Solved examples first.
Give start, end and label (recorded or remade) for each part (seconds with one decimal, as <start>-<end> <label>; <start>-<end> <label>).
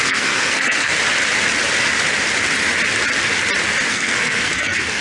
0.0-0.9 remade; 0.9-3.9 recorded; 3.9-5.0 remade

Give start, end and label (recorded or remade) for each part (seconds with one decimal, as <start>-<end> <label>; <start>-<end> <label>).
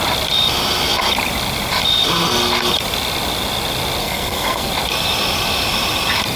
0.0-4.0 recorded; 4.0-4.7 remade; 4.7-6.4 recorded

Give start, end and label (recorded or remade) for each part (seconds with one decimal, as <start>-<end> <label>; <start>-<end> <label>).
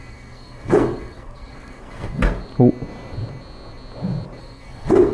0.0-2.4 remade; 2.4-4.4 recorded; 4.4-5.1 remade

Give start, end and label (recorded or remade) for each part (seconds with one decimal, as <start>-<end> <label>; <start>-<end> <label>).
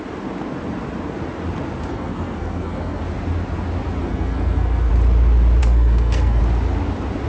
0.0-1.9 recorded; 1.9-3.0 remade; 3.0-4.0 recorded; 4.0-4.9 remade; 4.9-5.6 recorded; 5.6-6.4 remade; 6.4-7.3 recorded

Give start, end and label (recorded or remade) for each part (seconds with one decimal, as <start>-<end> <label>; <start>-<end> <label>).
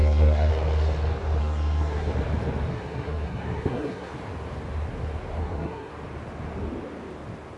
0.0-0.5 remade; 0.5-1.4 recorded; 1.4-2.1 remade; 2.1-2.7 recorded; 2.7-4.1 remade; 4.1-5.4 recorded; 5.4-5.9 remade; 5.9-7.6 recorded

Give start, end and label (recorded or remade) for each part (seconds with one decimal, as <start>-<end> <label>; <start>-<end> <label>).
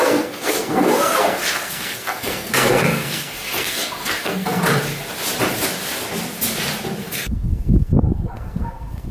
0.0-4.6 remade; 4.6-7.0 recorded; 7.0-9.1 remade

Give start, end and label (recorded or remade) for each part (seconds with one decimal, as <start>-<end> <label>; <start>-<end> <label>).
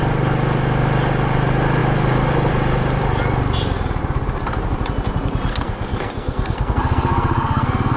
0.0-5.5 recorded; 5.5-8.0 remade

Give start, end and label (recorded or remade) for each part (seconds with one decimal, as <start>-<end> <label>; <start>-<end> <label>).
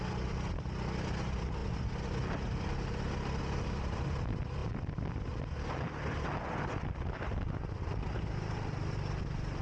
0.0-9.6 recorded